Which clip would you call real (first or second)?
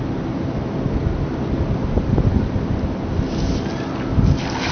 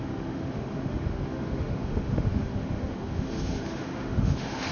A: first